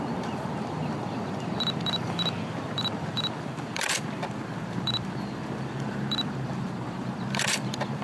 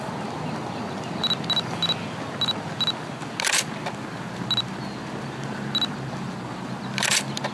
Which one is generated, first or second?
first